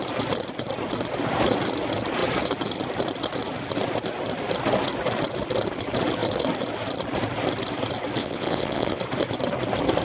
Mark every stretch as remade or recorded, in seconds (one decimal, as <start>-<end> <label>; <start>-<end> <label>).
0.0-8.2 recorded; 8.2-9.0 remade; 9.0-10.0 recorded